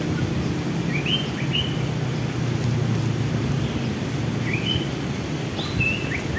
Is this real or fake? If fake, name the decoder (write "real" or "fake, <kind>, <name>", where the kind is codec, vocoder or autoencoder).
real